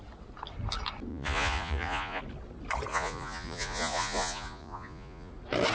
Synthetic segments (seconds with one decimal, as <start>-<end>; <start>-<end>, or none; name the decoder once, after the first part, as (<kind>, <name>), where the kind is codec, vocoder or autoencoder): 1.1-2.2 (vocoder, Vocos); 2.9-5.3